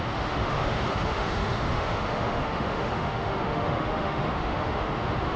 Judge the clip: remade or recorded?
remade